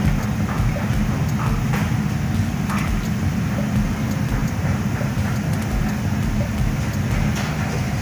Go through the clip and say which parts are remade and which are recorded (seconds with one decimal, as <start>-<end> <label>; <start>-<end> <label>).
0.0-4.4 recorded; 4.4-5.9 remade; 5.9-8.0 recorded